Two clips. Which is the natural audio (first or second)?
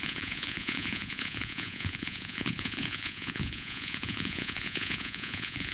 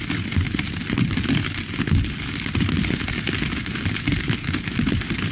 second